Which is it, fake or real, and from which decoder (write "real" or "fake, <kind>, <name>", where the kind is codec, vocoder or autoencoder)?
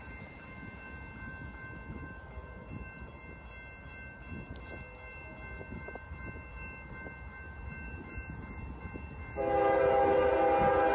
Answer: real